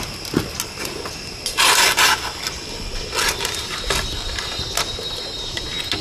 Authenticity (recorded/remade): recorded